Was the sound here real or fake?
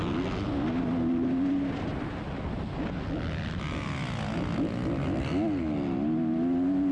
real